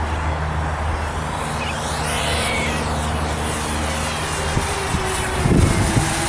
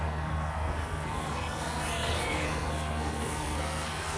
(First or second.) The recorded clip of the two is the first